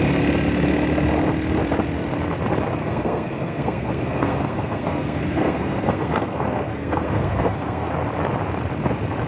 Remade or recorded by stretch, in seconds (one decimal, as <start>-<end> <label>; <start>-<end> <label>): 0.0-2.8 recorded; 2.8-7.9 remade; 7.9-9.3 recorded